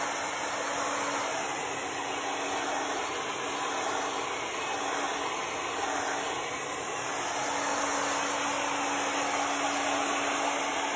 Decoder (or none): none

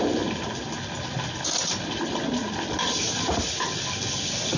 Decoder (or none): none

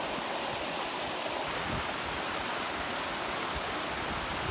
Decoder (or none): none